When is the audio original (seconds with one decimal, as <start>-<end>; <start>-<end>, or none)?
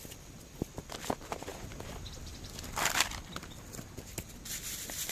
0.0-1.5; 3.0-5.1